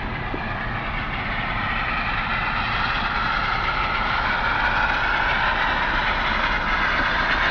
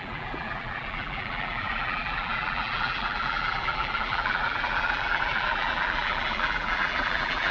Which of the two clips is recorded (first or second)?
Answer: first